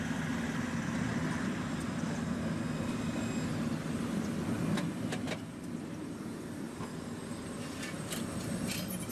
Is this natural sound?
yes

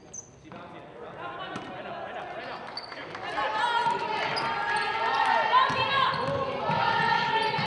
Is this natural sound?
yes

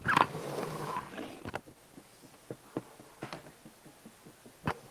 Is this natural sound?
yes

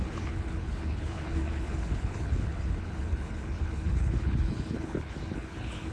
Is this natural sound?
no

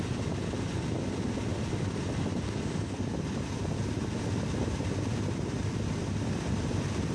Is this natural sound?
no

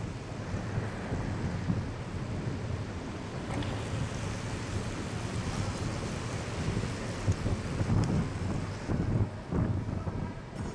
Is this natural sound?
yes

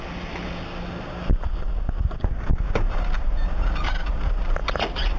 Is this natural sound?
yes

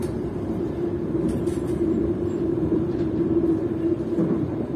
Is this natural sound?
no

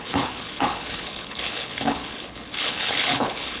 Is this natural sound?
no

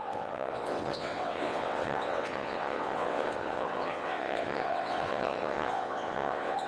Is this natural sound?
no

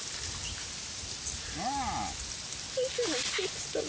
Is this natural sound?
yes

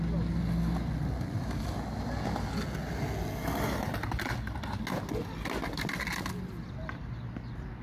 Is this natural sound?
yes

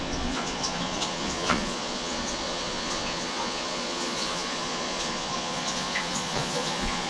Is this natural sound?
no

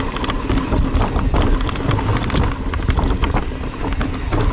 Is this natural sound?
yes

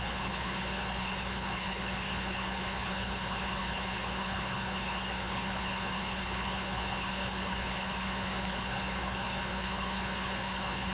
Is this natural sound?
no